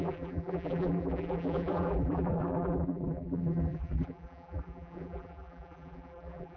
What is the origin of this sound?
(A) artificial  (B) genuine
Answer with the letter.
A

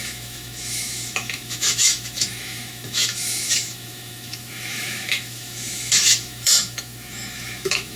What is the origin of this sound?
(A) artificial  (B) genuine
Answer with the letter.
A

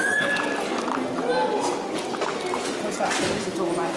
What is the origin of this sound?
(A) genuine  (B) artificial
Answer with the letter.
A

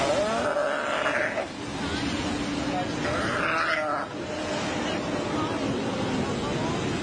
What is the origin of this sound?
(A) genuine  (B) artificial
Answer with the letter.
A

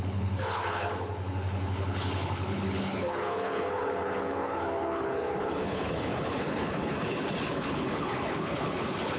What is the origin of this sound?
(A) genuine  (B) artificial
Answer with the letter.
B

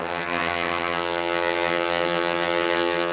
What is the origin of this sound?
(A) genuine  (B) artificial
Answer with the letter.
B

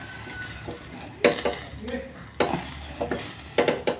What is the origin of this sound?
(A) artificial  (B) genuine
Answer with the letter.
B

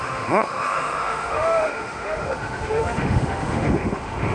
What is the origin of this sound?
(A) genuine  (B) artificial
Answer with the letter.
B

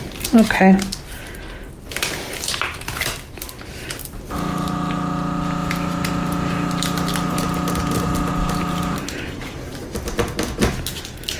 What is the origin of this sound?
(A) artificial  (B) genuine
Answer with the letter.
B